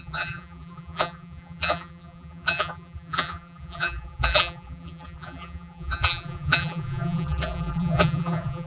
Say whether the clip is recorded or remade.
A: remade